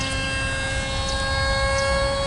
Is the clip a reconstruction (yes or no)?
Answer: no